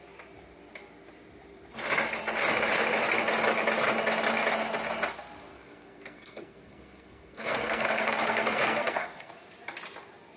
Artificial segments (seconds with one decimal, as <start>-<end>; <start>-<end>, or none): 5.5-9.3